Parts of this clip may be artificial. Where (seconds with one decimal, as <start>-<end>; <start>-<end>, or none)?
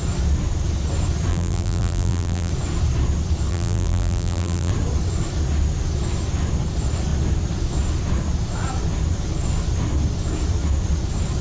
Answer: 1.3-2.5; 3.5-4.7